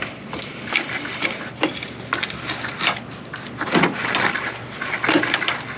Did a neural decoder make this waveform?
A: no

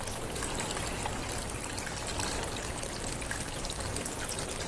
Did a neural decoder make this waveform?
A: no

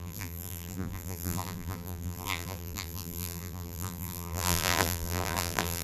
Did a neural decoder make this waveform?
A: yes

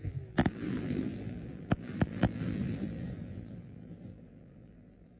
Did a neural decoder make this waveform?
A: yes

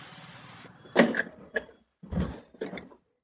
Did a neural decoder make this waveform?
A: yes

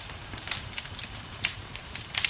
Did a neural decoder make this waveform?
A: yes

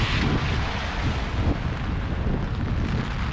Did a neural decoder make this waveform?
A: no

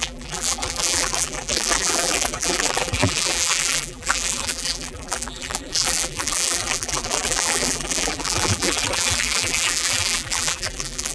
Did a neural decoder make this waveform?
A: yes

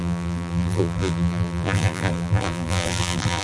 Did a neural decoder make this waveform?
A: yes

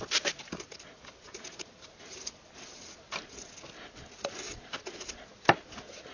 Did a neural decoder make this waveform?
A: no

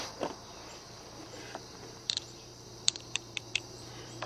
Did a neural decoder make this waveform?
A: yes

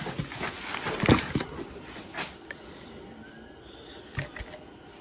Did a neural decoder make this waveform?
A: no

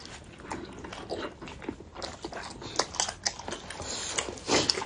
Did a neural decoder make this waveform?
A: no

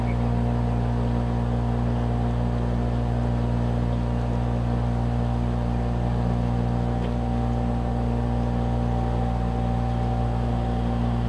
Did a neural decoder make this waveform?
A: no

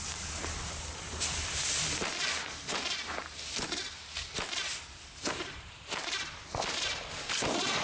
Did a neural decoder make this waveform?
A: yes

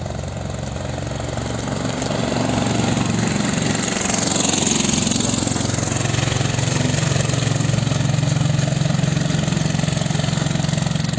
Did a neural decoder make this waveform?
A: no